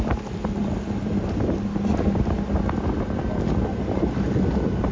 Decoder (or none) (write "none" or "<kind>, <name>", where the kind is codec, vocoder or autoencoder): none